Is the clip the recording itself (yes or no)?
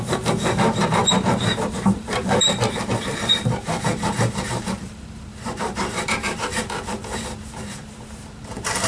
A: no